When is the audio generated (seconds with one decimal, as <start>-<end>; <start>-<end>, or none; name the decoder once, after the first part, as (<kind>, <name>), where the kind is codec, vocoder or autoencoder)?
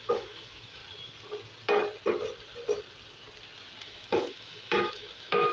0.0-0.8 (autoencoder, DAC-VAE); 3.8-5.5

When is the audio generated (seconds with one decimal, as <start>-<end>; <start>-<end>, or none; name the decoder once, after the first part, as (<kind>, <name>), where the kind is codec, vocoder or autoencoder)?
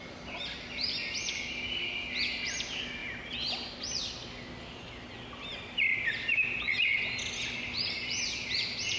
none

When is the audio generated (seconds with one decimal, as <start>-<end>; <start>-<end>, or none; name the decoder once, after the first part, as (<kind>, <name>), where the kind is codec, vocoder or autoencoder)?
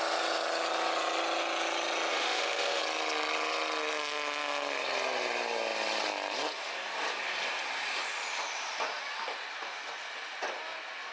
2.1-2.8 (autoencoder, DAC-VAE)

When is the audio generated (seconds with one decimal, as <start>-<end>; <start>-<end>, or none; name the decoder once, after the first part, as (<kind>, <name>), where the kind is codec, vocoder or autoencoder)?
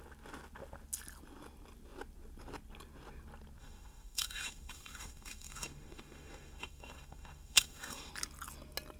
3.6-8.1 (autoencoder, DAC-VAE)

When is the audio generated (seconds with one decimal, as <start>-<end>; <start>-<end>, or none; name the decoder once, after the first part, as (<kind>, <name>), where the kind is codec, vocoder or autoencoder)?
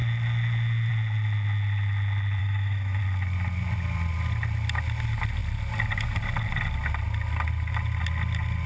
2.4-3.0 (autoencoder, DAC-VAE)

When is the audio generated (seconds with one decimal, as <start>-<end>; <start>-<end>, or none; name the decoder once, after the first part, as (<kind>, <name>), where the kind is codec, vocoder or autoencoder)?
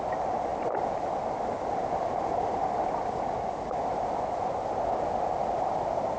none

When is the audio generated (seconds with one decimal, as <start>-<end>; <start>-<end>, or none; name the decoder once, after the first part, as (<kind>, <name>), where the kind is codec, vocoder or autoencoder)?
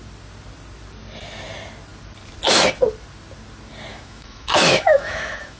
3.9-5.6 (autoencoder, DAC-VAE)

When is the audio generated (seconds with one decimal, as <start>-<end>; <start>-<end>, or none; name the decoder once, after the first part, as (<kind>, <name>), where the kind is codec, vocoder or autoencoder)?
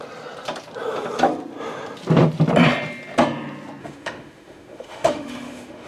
3.8-5.9 (autoencoder, DAC-VAE)